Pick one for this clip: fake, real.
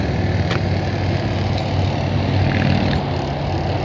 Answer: real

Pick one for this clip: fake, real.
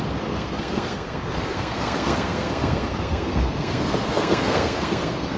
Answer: fake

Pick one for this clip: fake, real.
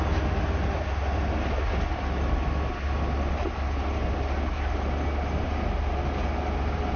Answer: real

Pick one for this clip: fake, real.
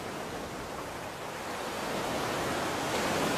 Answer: real